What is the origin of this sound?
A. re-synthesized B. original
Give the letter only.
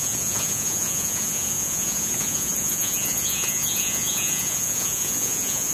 A